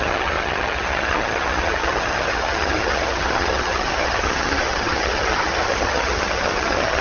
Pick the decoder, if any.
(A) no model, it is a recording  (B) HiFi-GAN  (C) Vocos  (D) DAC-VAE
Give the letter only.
B